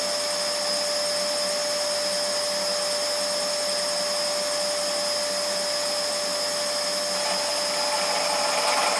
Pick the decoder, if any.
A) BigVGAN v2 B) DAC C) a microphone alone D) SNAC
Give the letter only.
C